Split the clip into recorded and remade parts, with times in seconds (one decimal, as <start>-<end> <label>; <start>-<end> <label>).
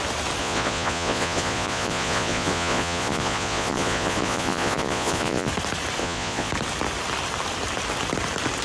0.0-0.4 recorded; 0.4-5.5 remade; 5.5-6.0 recorded; 6.0-6.5 remade; 6.5-8.6 recorded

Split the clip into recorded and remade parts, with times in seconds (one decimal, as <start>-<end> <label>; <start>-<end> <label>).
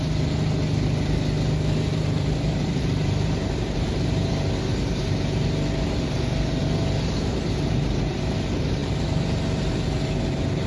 0.0-1.9 recorded; 1.9-4.3 remade; 4.3-6.6 recorded; 6.6-7.8 remade; 7.8-8.8 recorded; 8.8-10.1 remade; 10.1-10.7 recorded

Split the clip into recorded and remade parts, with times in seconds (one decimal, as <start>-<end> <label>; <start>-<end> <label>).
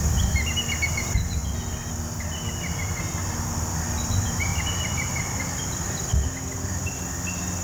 0.0-4.5 recorded; 4.5-6.1 remade; 6.1-7.6 recorded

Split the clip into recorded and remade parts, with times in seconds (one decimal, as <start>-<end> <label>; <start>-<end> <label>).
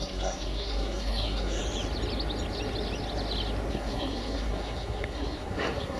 0.0-1.6 remade; 1.6-3.7 recorded; 3.7-6.0 remade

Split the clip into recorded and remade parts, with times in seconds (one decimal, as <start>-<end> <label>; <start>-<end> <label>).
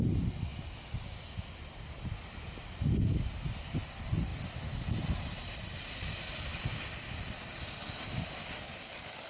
0.0-4.3 recorded; 4.3-6.8 remade; 6.8-9.3 recorded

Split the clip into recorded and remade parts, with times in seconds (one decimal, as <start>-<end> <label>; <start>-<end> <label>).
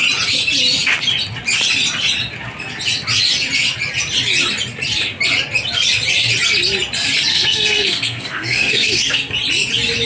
0.0-7.3 recorded; 7.3-9.3 remade; 9.3-10.1 recorded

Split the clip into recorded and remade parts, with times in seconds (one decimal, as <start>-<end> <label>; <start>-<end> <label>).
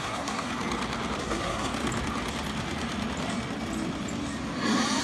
0.0-0.5 remade; 0.5-1.2 recorded; 1.2-1.7 remade; 1.7-5.0 recorded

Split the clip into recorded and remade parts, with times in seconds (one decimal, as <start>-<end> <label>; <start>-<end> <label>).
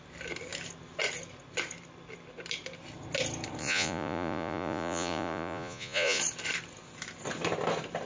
0.0-3.6 recorded; 3.6-6.2 remade; 6.2-8.1 recorded